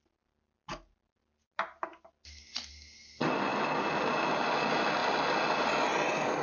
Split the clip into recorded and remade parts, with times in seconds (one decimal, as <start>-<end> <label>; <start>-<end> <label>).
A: 0.0-6.4 recorded